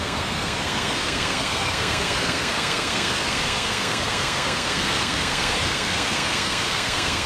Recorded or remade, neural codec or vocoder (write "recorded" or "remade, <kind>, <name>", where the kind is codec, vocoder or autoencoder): remade, codec, SNAC